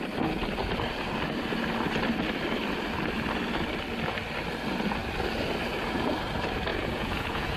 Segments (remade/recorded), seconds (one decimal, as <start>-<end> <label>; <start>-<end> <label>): 0.0-6.7 recorded; 6.7-7.6 remade